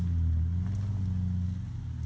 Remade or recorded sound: recorded